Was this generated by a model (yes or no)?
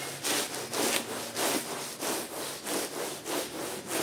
no